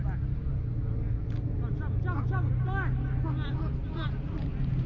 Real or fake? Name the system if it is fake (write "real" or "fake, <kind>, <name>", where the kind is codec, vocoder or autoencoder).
real